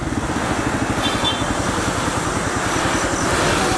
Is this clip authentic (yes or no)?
yes